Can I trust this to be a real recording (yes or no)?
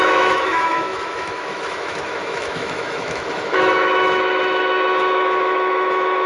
no